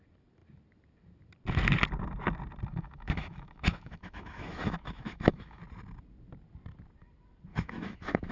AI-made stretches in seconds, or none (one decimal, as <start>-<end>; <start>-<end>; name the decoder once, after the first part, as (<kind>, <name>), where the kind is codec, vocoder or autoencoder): 2.7-5.6 (autoencoder, DAC-VAE); 7.5-8.3